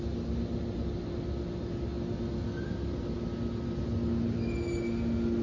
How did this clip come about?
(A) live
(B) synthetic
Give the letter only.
A